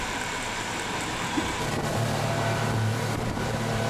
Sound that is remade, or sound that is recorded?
remade